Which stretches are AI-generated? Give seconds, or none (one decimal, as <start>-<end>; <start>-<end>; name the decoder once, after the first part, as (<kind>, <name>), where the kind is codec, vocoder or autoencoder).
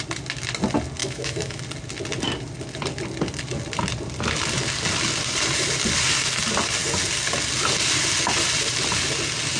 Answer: 1.0-1.6 (autoencoder, DAC-VAE)